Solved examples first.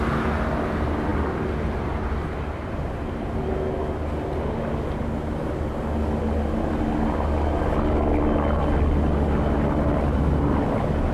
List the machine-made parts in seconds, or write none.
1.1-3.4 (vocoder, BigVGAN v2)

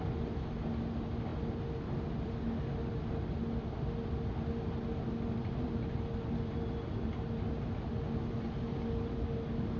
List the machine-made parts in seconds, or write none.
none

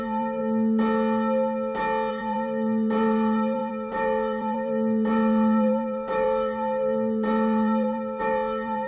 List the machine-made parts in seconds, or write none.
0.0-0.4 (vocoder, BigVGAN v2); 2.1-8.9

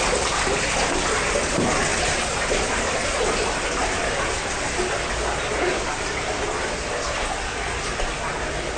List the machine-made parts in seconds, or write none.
1.9-2.4 (vocoder, BigVGAN v2)

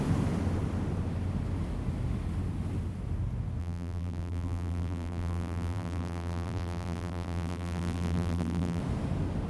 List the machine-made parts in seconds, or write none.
3.6-8.8 (vocoder, BigVGAN v2)

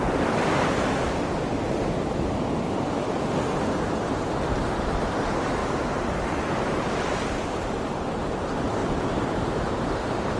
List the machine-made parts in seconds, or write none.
5.6-6.1 (vocoder, BigVGAN v2)